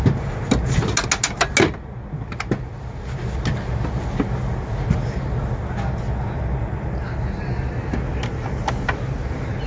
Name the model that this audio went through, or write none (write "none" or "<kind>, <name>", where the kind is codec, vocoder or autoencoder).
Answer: none